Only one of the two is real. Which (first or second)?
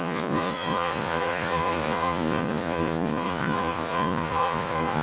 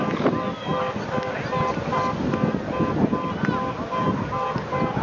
second